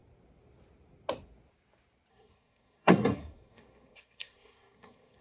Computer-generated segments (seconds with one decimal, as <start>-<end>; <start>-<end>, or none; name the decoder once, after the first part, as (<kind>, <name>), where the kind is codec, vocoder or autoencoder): 2.1-5.2 (codec, SNAC)